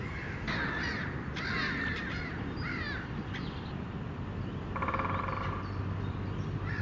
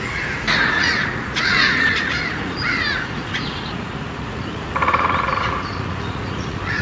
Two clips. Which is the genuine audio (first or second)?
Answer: first